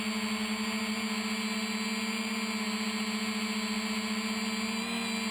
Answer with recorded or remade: recorded